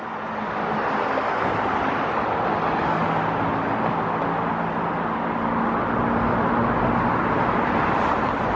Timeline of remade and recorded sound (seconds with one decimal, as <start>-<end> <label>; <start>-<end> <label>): 0.0-8.6 recorded